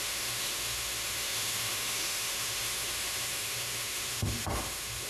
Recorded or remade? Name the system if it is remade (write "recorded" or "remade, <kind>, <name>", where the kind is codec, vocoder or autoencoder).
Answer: remade, autoencoder, DAC-VAE